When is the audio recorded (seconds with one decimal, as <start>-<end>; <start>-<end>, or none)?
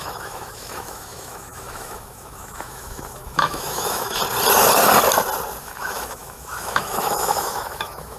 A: 4.2-5.6